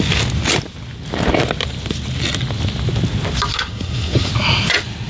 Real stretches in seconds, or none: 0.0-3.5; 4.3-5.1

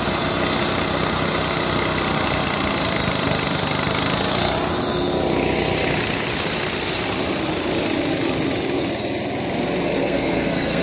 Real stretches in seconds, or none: 0.0-10.0

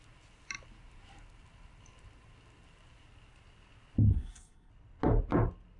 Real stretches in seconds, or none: 0.0-4.1; 4.7-5.8